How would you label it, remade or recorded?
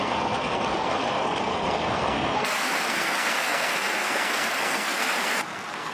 remade